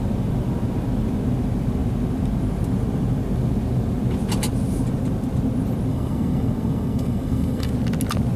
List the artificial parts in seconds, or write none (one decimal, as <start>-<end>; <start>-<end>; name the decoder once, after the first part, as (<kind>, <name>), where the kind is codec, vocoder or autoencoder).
5.9-7.7 (codec, SNAC)